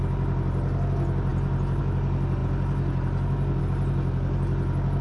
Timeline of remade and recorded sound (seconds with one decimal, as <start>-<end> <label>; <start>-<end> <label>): 0.0-1.3 recorded; 1.3-1.8 remade; 1.8-5.0 recorded